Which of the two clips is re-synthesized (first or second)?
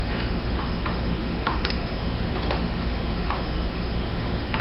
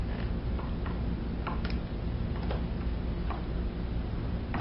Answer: first